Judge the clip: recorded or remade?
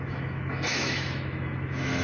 remade